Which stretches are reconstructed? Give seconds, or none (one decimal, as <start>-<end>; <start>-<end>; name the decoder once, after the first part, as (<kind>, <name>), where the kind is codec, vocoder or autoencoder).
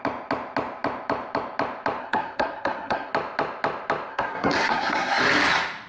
2.0-3.1 (codec, SNAC); 4.1-5.2